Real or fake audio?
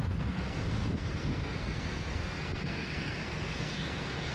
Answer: fake